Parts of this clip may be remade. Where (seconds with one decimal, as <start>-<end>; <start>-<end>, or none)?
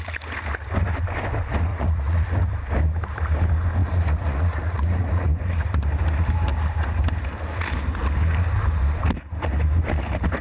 1.7-2.4; 3.8-5.3